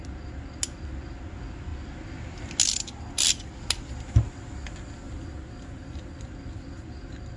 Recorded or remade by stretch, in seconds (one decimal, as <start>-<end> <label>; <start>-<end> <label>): 0.0-7.4 recorded